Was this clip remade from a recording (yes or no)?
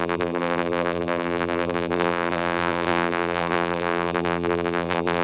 yes